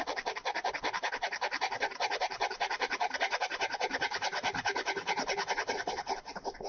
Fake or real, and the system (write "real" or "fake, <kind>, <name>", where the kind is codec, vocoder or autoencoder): fake, vocoder, BigVGAN v2